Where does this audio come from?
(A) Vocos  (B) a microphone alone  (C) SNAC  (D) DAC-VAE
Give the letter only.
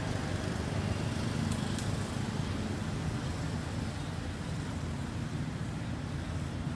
B